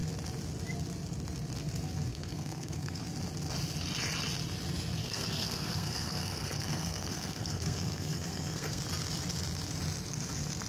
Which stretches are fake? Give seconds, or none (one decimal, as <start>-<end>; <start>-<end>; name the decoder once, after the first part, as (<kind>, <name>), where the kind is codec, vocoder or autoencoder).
2.1-3.0 (codec, SNAC); 5.0-8.8